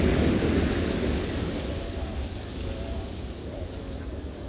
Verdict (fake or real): fake